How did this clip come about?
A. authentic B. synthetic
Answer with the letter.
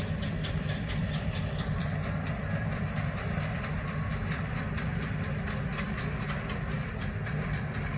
A